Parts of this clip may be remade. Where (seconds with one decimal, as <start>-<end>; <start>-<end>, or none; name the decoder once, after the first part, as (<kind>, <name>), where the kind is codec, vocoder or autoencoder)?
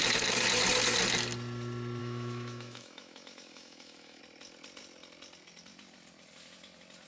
2.0-4.2 (autoencoder, DAC-VAE)